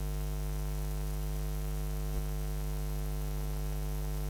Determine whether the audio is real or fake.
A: real